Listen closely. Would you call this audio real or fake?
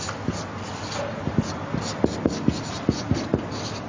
real